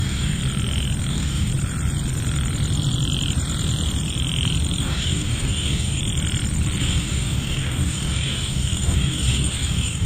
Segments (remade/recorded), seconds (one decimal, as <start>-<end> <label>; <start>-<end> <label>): 0.0-0.4 remade; 0.4-1.1 recorded; 1.1-1.5 remade; 1.5-4.8 recorded; 4.8-6.0 remade; 6.0-6.8 recorded; 6.8-10.1 remade